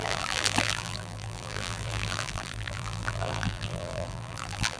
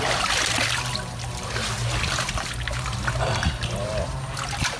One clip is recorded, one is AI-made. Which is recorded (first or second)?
second